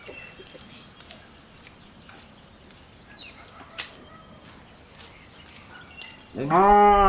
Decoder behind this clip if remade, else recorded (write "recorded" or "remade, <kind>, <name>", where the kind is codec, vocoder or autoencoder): recorded